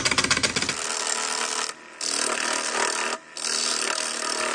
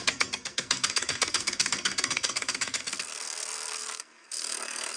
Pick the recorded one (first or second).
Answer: first